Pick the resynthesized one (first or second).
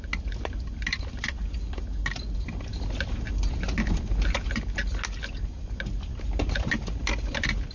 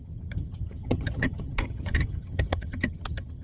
second